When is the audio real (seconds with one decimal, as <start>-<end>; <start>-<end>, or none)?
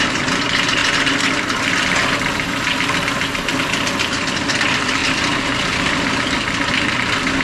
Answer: 0.0-7.4